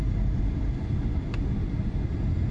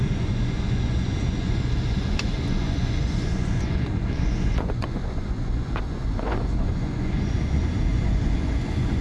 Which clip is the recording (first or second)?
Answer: first